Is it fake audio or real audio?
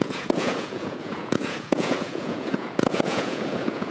fake